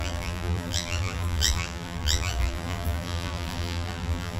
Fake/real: fake